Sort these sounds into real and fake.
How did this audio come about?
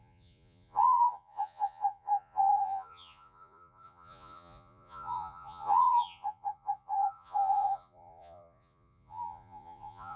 fake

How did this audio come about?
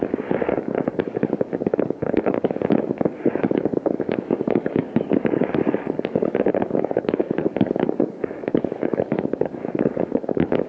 fake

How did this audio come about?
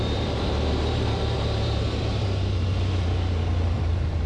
fake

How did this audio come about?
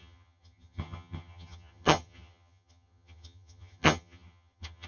fake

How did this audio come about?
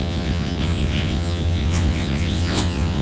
fake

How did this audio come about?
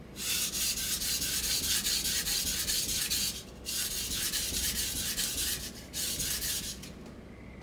real